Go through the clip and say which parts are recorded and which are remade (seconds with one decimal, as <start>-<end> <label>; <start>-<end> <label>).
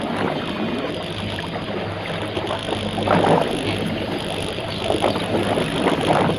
0.0-6.4 recorded